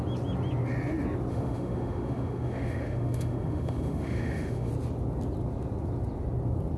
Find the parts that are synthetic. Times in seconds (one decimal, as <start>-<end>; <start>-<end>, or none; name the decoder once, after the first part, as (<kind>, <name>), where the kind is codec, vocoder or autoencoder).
1.3-4.7 (autoencoder, DAC-VAE)

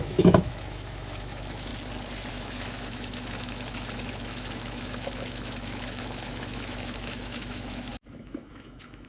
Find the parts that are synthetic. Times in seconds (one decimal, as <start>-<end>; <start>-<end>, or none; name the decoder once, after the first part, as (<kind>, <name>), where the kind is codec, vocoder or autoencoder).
0.0-1.7 (autoencoder, DAC-VAE); 2.3-9.1

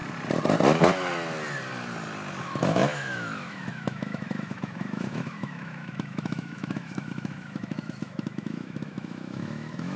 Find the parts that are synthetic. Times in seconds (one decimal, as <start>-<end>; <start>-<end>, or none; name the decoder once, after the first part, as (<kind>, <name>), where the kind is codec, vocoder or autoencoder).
2.4-10.0 (autoencoder, DAC-VAE)

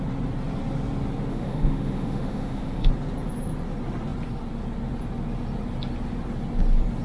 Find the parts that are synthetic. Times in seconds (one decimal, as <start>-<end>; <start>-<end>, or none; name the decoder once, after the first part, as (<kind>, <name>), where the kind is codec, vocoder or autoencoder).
1.3-2.9 (autoencoder, DAC-VAE)

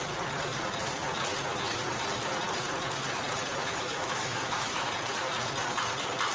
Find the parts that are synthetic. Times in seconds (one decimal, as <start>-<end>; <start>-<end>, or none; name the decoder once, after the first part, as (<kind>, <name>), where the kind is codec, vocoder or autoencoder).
3.6-4.9 (autoencoder, DAC-VAE)

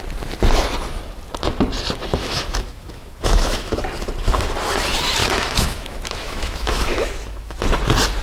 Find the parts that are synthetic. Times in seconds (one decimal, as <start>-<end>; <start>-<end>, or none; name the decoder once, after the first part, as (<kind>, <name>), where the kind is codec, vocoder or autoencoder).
2.2-3.8 (autoencoder, DAC-VAE); 5.2-7.6